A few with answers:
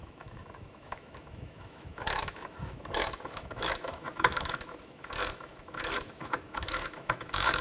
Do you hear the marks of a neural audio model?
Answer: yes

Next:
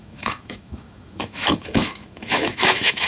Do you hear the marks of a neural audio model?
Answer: yes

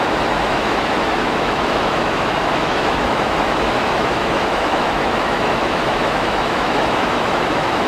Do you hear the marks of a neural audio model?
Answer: yes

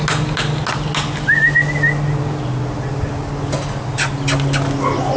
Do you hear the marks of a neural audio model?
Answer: no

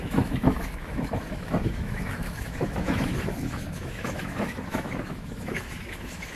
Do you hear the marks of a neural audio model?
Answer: yes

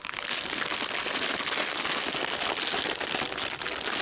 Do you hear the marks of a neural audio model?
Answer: no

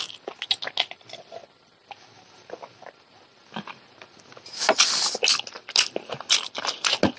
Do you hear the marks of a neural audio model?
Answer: no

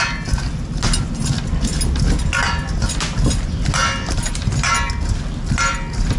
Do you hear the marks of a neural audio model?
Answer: no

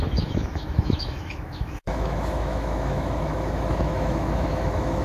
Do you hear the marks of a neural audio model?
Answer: yes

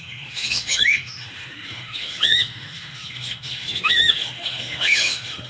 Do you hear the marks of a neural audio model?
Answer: yes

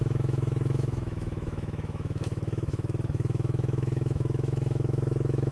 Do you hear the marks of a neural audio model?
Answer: yes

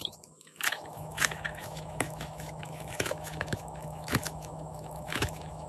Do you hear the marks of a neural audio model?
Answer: yes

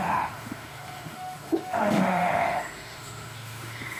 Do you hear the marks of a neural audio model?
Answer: yes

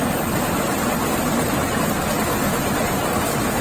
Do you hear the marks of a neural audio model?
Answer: no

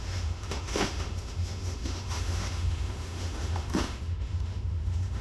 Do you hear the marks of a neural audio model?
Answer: yes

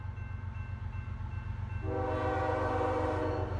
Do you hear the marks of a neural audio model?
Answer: no